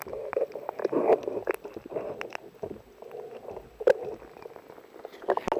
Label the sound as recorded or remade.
recorded